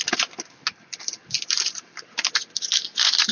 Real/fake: real